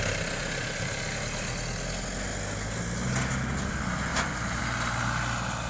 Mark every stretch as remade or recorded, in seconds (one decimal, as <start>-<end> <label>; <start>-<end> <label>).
0.0-5.7 recorded